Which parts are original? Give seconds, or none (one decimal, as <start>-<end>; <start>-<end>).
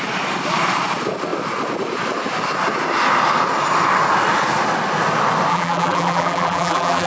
0.0-5.5